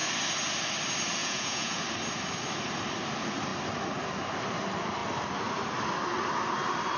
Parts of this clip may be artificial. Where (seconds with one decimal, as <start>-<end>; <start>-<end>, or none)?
1.2-1.8